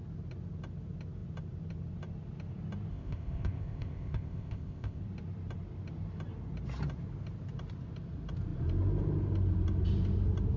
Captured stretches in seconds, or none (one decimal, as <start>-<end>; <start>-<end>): 0.0-2.9; 5.0-10.6